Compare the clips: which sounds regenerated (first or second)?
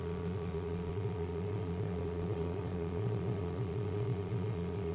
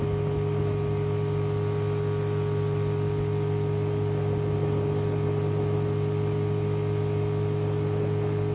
first